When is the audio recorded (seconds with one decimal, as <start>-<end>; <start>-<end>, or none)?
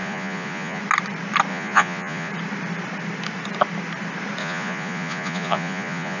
0.8-1.5; 2.3-4.4